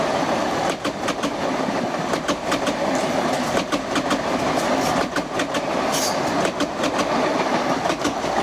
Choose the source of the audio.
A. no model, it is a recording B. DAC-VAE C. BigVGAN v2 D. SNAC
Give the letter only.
A